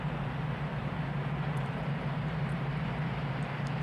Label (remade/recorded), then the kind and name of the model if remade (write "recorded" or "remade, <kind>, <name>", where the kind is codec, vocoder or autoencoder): remade, vocoder, BigVGAN v2